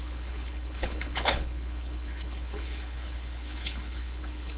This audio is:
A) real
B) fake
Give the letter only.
B